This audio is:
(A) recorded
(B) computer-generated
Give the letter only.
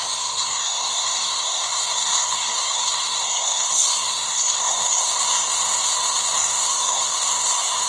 B